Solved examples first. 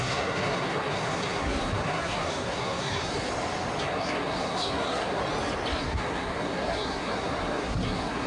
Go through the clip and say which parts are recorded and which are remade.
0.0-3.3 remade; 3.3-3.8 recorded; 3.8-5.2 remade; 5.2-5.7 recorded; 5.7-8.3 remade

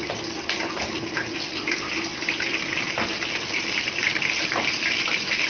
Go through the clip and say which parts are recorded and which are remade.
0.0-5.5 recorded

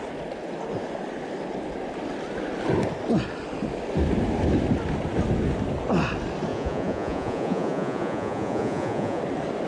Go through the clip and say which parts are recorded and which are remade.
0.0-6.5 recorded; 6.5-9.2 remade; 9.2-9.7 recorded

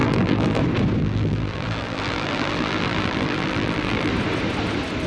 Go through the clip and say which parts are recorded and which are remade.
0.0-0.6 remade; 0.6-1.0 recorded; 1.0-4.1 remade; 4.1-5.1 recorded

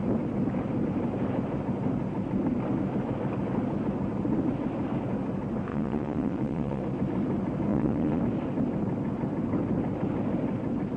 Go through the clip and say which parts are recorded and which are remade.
0.0-5.7 recorded; 5.7-6.8 remade; 6.8-7.7 recorded; 7.7-8.2 remade; 8.2-11.0 recorded

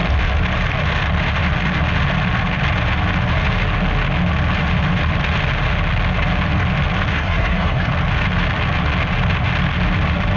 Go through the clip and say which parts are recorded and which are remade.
0.0-7.1 recorded; 7.1-7.9 remade; 7.9-10.4 recorded

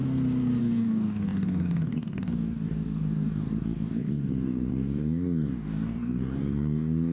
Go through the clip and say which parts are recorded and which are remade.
0.0-0.6 recorded; 0.6-7.1 remade

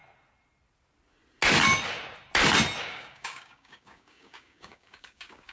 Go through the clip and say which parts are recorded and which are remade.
0.0-2.8 recorded; 2.8-5.5 remade